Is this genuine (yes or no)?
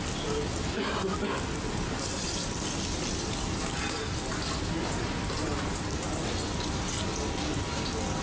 yes